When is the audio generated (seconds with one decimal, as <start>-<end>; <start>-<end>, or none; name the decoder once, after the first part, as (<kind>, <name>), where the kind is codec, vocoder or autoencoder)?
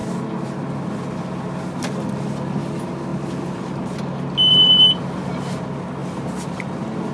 0.0-2.2 (vocoder, BigVGAN v2); 4.5-5.6